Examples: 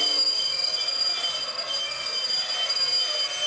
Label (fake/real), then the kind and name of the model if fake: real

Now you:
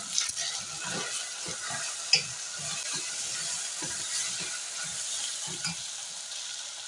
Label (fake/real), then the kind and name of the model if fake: real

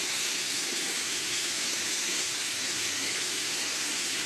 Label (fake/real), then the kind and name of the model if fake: fake, codec, SNAC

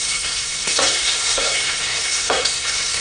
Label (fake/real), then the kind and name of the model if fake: fake, codec, SNAC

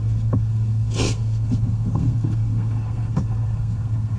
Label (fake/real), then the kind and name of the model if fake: fake, codec, SNAC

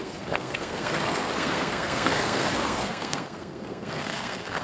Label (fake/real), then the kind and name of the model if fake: fake, codec, SNAC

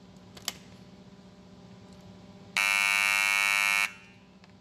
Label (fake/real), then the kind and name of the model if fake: real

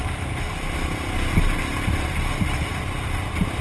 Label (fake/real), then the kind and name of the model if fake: real